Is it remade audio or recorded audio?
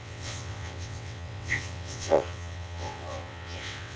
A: remade